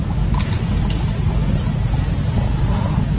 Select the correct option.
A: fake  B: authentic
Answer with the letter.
B